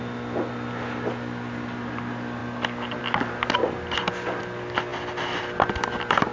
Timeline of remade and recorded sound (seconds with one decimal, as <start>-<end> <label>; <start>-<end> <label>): 0.0-6.3 recorded